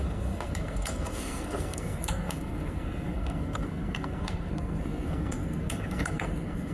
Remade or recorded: remade